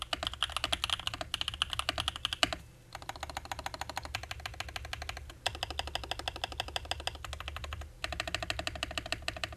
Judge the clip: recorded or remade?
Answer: recorded